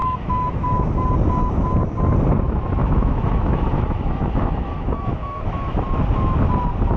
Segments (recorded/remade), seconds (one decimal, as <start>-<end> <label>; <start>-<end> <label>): 0.0-1.1 remade; 1.1-2.8 recorded; 2.8-5.8 remade; 5.8-7.0 recorded